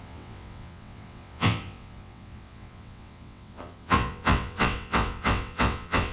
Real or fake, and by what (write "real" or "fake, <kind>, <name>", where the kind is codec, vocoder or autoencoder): fake, vocoder, WaveNeXt